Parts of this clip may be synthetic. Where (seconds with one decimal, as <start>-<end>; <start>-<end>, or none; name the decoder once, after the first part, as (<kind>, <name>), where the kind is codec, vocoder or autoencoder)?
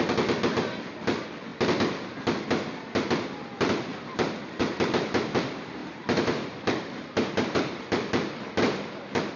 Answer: 5.8-7.8 (vocoder, BigVGAN v2)